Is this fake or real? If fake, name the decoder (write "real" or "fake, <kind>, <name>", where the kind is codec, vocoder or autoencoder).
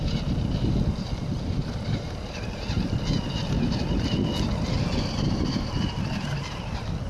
fake, vocoder, BigVGAN v2